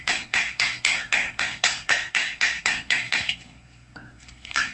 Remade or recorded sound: remade